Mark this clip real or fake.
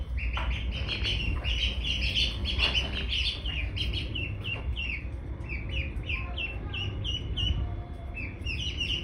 real